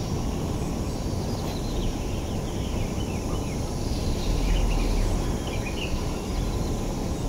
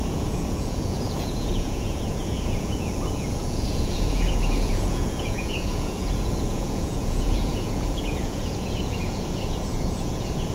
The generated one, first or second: second